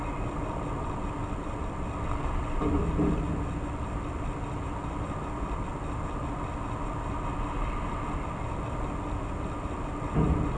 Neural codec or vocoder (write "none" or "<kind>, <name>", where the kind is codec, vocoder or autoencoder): none